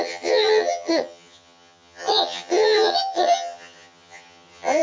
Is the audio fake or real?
fake